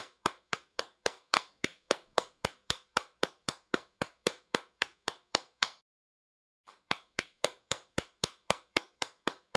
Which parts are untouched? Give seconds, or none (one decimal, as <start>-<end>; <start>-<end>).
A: none

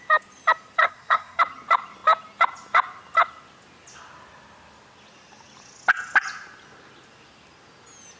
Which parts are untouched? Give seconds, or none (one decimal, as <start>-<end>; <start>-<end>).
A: 0.0-0.8; 1.4-8.2

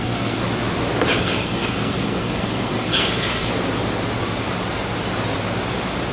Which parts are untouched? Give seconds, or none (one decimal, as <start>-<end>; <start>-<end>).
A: 0.4-1.2; 3.5-6.1

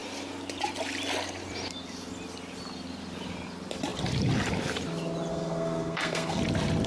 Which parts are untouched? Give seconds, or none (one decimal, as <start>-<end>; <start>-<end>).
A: 0.0-5.3; 6.4-6.9

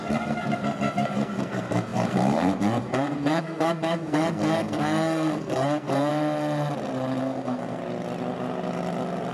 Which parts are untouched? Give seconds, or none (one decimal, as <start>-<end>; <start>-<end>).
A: 6.1-7.2; 7.8-9.3

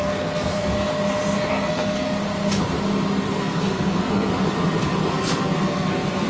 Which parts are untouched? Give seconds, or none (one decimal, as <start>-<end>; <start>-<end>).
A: 0.7-1.5; 2.2-3.4; 4.3-5.1

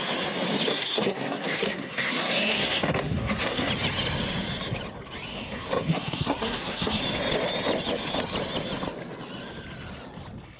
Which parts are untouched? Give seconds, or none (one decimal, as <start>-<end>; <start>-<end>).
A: 0.0-0.7; 3.7-5.3; 7.0-10.6

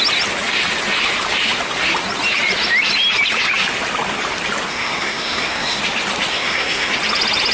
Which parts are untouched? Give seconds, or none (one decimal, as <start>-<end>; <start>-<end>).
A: 0.0-4.7; 5.8-6.3; 6.9-7.5